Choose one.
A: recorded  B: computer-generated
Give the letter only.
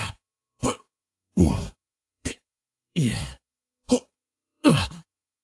B